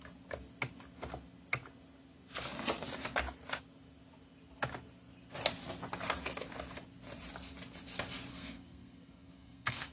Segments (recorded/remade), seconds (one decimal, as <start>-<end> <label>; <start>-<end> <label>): 0.0-8.3 recorded; 8.3-9.9 remade